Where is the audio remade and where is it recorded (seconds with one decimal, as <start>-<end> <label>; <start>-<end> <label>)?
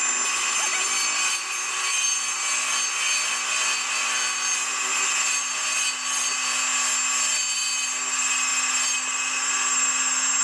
0.0-10.4 recorded